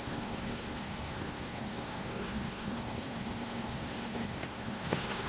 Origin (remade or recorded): remade